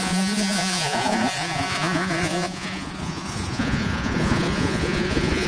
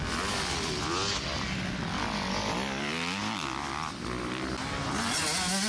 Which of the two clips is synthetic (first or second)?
first